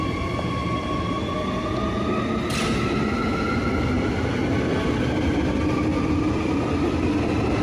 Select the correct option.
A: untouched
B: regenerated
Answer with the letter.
A